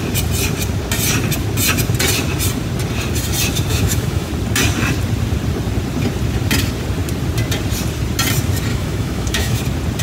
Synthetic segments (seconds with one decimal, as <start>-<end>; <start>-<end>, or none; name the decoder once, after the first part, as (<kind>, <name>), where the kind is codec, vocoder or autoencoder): 3.7-4.3 (autoencoder, DAC-VAE); 8.7-9.6